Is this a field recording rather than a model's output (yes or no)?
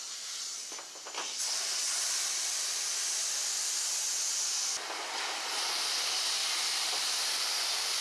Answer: yes